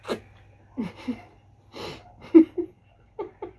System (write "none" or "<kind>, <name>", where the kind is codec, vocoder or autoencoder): none